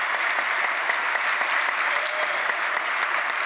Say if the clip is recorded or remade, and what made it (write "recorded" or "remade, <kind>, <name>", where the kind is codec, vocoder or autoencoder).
recorded